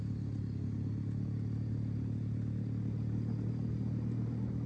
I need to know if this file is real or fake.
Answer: real